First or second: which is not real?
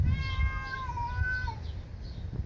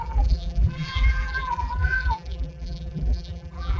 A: second